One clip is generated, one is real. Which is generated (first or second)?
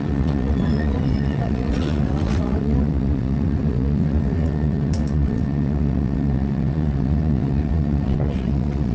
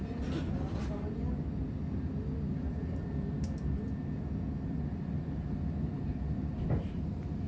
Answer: first